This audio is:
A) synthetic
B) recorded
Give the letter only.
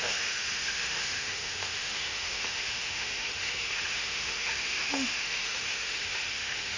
A